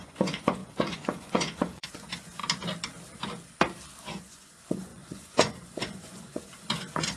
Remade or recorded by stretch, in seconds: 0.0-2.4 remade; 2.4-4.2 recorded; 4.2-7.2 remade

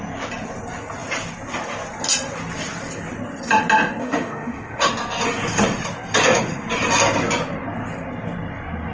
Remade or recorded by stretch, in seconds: 0.0-4.0 recorded; 4.0-4.9 remade; 4.9-8.9 recorded

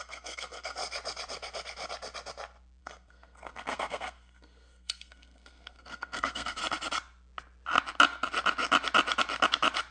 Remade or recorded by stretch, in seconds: 0.0-0.8 remade; 0.8-2.8 recorded; 2.8-6.6 remade; 6.6-9.9 recorded

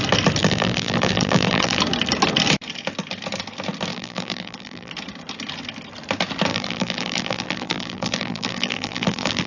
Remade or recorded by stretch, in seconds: 0.0-0.4 recorded; 0.4-1.8 remade; 1.8-3.9 recorded; 3.9-4.9 remade; 4.9-6.5 recorded; 6.5-9.5 remade

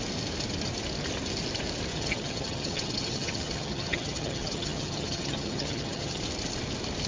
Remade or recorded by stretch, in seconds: 0.0-1.9 recorded; 1.9-6.2 remade; 6.2-7.1 recorded

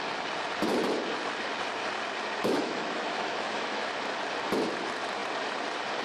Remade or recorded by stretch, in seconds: 0.0-2.4 recorded; 2.4-3.9 remade; 3.9-6.0 recorded

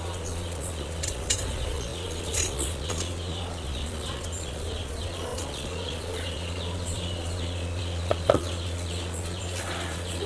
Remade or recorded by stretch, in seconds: 0.0-10.3 remade

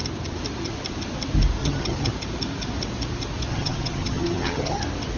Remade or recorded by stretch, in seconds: 0.0-1.6 recorded; 1.6-2.1 remade; 2.1-3.5 recorded; 3.5-4.8 remade; 4.8-5.2 recorded